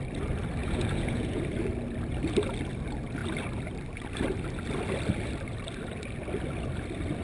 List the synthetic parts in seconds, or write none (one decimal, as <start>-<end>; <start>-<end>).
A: 0.6-1.4